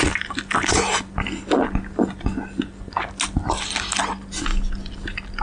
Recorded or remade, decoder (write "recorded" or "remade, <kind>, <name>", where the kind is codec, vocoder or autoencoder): recorded